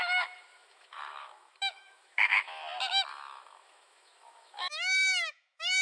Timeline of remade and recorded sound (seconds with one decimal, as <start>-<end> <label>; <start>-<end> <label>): 0.0-2.6 remade; 2.6-3.1 recorded; 3.1-5.8 remade